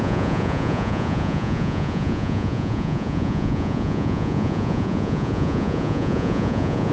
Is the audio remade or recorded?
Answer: remade